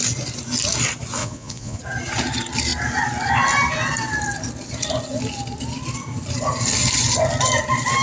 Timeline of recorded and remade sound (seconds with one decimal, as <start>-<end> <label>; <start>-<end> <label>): 0.0-1.2 recorded; 1.2-1.8 remade; 1.8-8.0 recorded